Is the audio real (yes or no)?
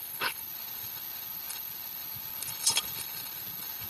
no